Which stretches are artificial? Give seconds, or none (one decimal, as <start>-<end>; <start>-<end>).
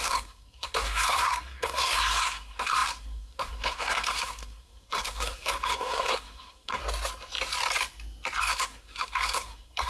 0.0-6.8; 8.4-9.9